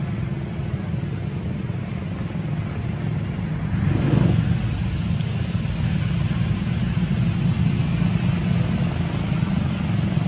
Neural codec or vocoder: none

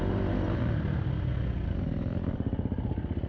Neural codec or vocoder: none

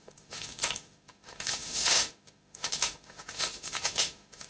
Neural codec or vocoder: autoencoder, DAC-VAE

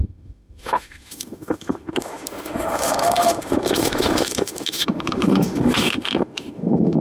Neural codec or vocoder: autoencoder, DAC-VAE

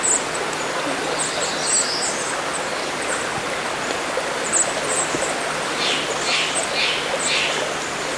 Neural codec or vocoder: none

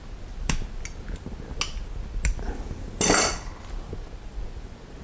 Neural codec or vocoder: none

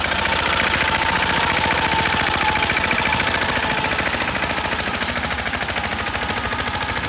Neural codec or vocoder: none